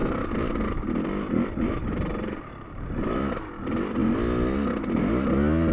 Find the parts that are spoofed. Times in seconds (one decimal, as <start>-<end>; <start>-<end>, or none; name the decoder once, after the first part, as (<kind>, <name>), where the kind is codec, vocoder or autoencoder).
0.0-3.0 (vocoder, BigVGAN v2)